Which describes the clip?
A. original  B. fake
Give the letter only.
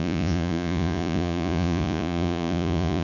B